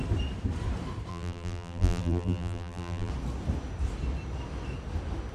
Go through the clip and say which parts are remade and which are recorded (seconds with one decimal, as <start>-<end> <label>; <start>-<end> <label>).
0.0-1.1 recorded; 1.1-3.1 remade; 3.1-5.3 recorded